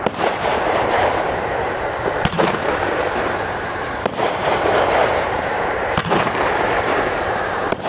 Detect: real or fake fake